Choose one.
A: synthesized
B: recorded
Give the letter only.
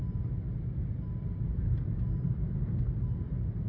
B